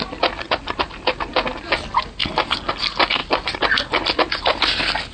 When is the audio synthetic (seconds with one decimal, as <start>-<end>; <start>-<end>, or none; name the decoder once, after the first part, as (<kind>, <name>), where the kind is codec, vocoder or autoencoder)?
none